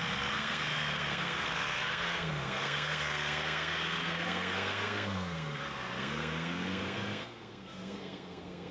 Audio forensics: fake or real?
fake